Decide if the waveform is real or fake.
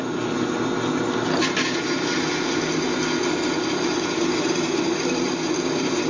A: real